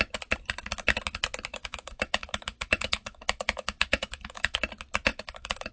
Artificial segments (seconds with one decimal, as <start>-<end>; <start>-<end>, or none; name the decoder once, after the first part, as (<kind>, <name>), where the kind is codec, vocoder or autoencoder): 1.5-4.6 (autoencoder, DAC-VAE); 5.1-5.7